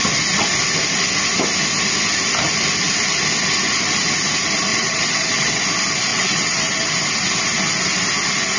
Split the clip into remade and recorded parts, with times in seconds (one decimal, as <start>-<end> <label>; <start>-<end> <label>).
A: 0.0-4.7 recorded; 4.7-5.6 remade; 5.6-6.1 recorded; 6.1-6.9 remade; 6.9-8.6 recorded